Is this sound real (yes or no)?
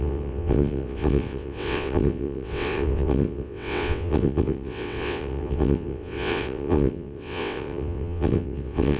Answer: no